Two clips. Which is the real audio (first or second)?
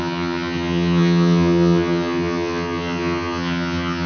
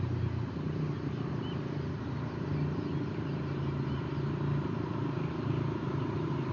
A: second